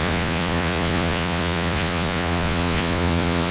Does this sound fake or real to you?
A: fake